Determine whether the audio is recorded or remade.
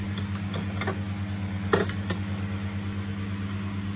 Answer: recorded